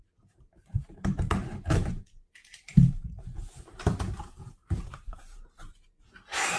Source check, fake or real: fake